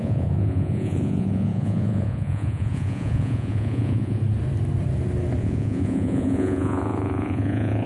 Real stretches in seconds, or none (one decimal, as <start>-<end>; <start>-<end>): 4.2-5.4